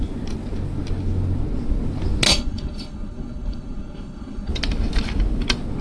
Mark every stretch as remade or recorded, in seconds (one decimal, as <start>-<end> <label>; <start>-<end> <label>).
0.0-2.3 recorded; 2.3-4.5 remade; 4.5-5.8 recorded